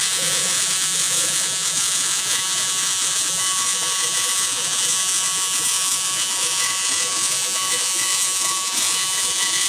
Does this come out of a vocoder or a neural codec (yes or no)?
yes